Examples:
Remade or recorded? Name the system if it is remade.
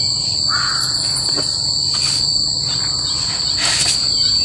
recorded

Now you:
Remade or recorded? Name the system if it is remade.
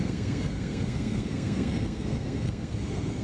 remade, codec, SNAC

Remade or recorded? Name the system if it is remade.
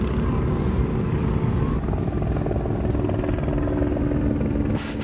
recorded